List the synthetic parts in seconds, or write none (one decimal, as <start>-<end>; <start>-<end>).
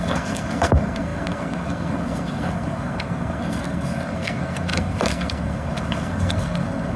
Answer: 0.0-7.0